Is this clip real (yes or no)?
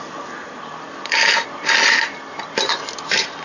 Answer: no